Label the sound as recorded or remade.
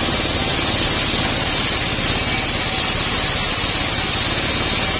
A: recorded